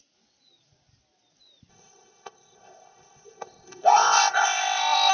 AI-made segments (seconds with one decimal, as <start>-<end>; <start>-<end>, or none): 1.7-5.1